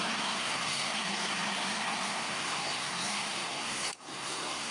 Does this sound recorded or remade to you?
remade